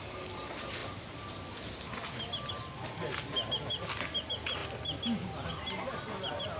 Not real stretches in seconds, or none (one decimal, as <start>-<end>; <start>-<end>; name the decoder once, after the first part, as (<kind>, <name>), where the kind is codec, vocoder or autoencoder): none